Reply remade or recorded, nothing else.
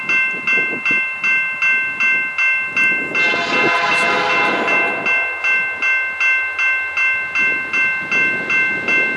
recorded